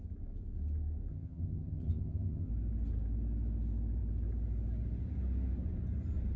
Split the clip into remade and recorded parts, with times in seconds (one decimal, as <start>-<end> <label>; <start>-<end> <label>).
0.0-1.1 recorded; 1.1-2.5 remade; 2.5-6.4 recorded